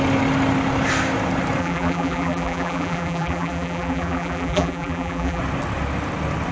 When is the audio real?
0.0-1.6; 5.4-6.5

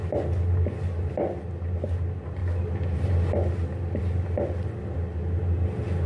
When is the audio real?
0.0-6.1

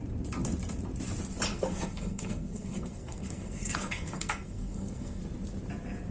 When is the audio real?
0.0-1.5; 5.2-6.1

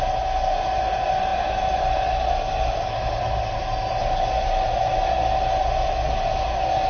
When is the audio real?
0.0-6.9